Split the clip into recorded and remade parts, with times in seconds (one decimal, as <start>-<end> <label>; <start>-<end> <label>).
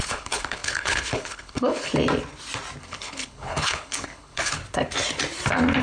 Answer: 0.0-1.9 remade; 1.9-2.8 recorded; 2.8-4.6 remade; 4.6-5.8 recorded